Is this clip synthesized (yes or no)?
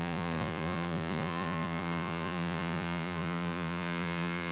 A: yes